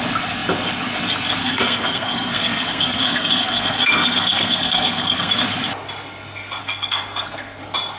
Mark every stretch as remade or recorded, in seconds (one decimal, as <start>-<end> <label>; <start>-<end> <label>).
0.0-1.4 recorded; 1.4-5.3 remade; 5.3-6.6 recorded; 6.6-7.6 remade; 7.6-8.0 recorded